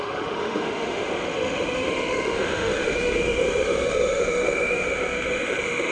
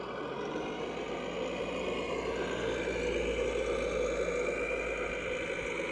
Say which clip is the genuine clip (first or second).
second